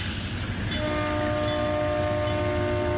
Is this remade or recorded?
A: recorded